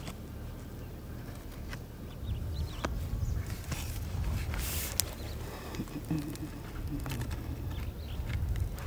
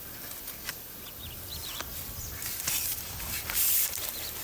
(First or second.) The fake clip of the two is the second